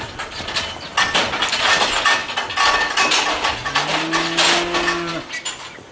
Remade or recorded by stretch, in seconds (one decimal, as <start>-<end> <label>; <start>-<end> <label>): 0.0-5.9 recorded